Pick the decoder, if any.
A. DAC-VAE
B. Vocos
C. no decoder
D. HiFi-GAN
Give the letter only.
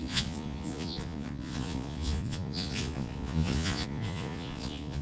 B